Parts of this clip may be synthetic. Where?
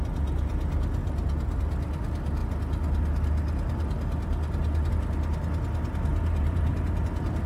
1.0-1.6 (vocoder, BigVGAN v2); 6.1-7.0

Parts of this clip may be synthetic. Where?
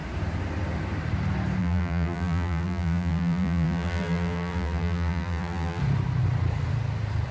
1.6-5.8 (vocoder, BigVGAN v2)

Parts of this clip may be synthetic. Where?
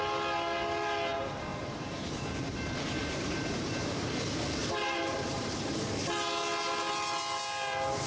1.5-2.6 (vocoder, BigVGAN v2); 3.0-4.1; 4.6-5.5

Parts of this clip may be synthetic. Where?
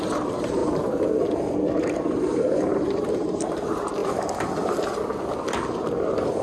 0.0-0.6 (vocoder, BigVGAN v2); 1.8-4.0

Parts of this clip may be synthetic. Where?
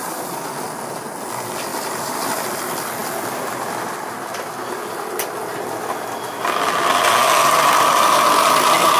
1.7-2.5 (vocoder, BigVGAN v2)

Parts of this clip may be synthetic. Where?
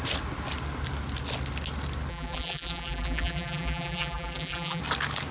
2.1-4.8 (vocoder, BigVGAN v2)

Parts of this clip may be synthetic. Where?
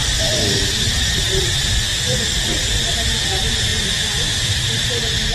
0.0-1.1 (vocoder, BigVGAN v2); 1.9-2.9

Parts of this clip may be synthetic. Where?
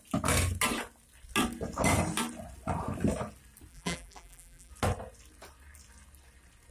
3.7-4.7 (vocoder, BigVGAN v2)